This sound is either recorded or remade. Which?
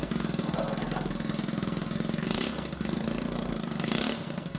remade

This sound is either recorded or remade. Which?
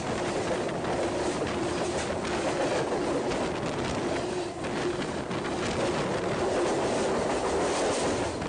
recorded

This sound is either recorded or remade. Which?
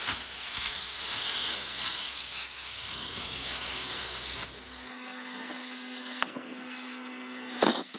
remade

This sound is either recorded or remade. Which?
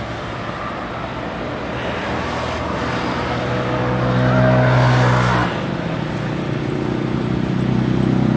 recorded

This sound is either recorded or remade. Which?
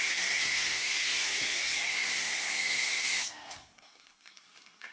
remade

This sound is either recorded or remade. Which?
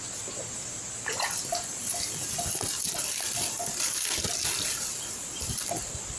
recorded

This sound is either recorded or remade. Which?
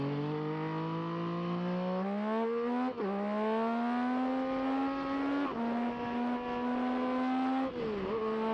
recorded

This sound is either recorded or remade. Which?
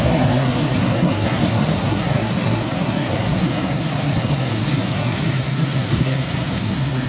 remade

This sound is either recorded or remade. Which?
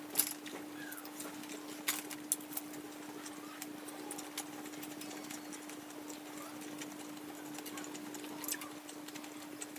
recorded